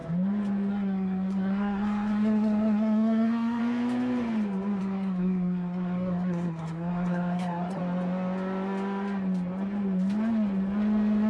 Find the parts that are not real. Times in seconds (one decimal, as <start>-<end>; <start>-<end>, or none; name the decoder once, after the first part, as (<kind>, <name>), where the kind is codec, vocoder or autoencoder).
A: 0.7-3.6 (codec, SNAC); 4.8-7.8